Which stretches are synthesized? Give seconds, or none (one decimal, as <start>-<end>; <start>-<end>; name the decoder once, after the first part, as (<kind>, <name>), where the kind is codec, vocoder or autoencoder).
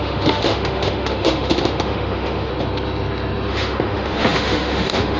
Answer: 0.0-2.5 (autoencoder, DAC-VAE); 3.5-5.2